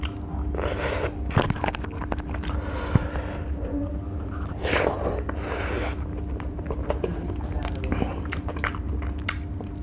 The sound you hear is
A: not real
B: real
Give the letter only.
B